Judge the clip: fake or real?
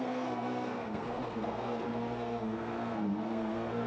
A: fake